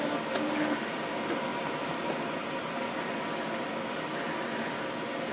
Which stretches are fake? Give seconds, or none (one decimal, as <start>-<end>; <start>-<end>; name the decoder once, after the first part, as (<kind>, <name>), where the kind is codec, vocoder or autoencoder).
none